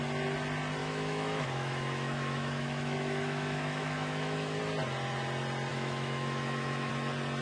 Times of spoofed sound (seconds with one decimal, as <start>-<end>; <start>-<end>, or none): 0.8-4.6; 5.7-6.9

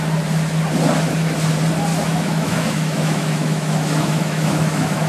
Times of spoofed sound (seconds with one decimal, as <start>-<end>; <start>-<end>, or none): 1.9-5.1

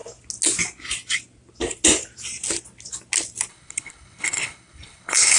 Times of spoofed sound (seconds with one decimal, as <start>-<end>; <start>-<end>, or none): 3.5-5.4

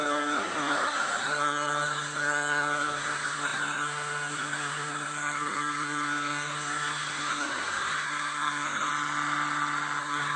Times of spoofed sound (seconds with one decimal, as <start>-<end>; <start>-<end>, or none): 0.0-8.9; 10.0-10.4

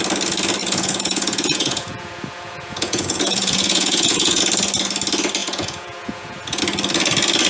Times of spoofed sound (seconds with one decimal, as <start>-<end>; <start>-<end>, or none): 0.6-4.4; 5.4-6.6

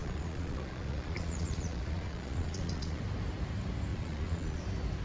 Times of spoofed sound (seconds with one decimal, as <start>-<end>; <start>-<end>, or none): 0.0-3.0; 3.9-4.6

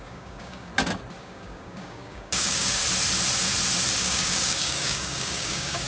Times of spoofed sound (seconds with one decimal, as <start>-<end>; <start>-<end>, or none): 0.0-0.7; 1.2-2.8; 4.0-5.9